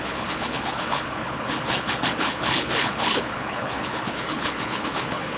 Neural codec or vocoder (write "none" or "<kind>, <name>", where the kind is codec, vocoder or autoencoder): codec, HILCodec